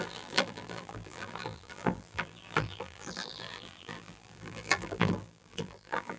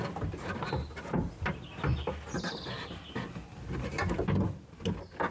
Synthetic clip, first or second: first